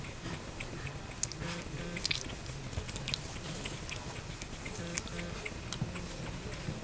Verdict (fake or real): real